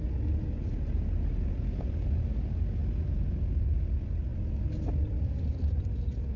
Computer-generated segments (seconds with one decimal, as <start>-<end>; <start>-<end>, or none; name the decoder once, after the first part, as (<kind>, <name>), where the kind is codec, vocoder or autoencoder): none